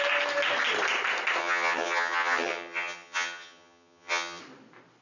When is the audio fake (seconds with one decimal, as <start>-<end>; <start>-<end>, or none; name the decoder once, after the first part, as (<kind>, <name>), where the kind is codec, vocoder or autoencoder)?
1.4-4.4 (vocoder, HiFi-GAN)